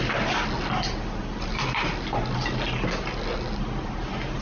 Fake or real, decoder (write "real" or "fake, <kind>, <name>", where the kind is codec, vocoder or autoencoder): real